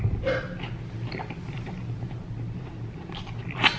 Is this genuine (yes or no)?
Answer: yes